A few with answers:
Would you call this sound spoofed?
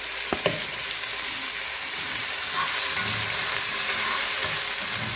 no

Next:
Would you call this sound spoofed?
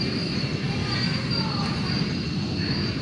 no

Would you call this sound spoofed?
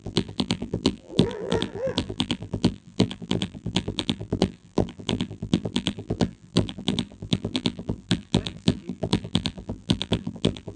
yes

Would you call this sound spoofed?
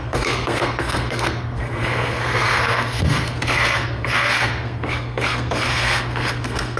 yes